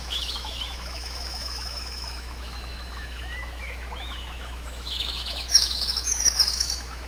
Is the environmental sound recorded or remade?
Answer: remade